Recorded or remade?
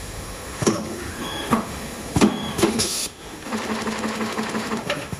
remade